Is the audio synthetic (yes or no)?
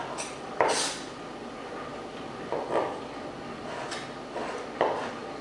no